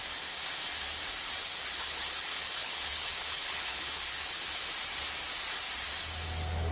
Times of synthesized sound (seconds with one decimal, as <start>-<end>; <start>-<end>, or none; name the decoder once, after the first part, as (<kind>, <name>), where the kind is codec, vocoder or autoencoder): 1.4-4.5 (codec, HILCodec)